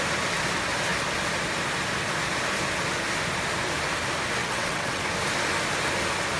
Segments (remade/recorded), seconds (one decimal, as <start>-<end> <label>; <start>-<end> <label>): 0.0-4.4 recorded; 4.4-5.0 remade; 5.0-6.4 recorded